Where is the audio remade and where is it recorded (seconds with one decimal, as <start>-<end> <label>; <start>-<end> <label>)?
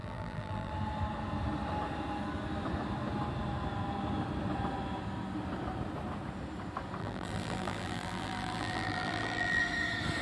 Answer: 0.0-0.7 remade; 0.7-7.0 recorded; 7.0-9.6 remade; 9.6-10.2 recorded